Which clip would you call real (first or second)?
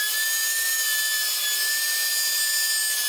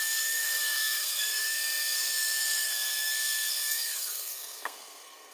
first